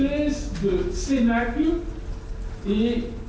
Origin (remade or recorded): recorded